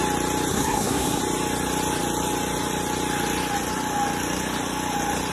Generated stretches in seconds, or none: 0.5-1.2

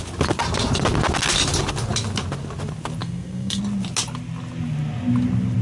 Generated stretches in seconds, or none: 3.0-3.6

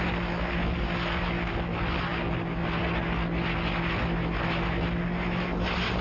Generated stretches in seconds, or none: none

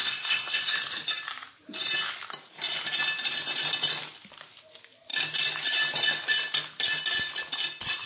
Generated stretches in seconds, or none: 0.0-0.6

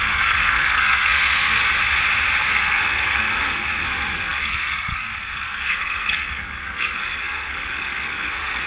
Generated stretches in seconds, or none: 0.0-1.6; 2.4-8.7

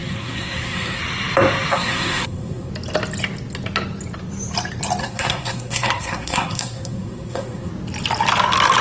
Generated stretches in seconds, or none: 0.0-1.0; 1.7-2.7; 5.0-7.7

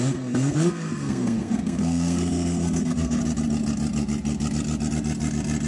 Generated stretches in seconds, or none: 0.0-3.2